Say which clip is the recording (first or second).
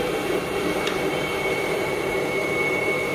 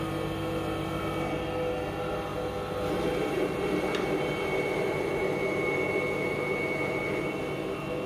second